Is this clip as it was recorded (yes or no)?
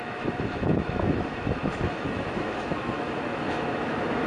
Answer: no